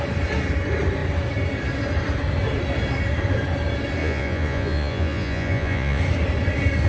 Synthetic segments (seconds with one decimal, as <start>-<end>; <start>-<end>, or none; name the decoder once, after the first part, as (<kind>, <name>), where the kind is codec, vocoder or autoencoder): 4.0-6.0 (vocoder, Vocos)